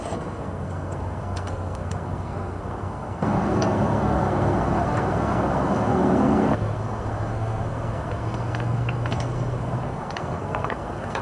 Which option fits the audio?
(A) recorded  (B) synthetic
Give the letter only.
B